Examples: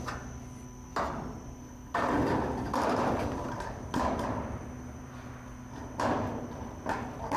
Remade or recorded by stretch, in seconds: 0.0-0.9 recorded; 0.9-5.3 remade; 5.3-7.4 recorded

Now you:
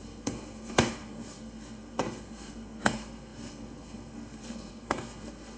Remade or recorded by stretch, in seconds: 0.0-5.6 remade

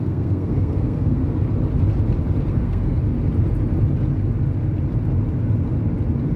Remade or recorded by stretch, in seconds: 0.0-1.2 remade; 1.2-2.5 recorded; 2.5-3.0 remade; 3.0-6.4 recorded

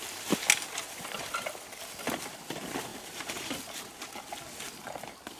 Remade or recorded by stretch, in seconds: 0.0-2.9 recorded; 2.9-4.2 remade; 4.2-5.4 recorded

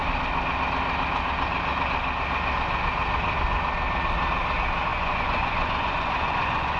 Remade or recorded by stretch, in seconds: 0.0-4.9 recorded; 4.9-6.8 remade

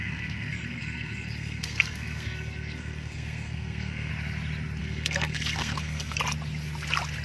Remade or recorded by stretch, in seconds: 0.0-4.1 remade; 4.1-4.8 recorded; 4.8-6.2 remade; 6.2-7.2 recorded

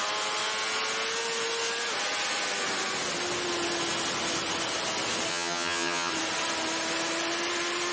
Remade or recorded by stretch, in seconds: 0.0-5.3 recorded; 5.3-6.1 remade; 6.1-7.9 recorded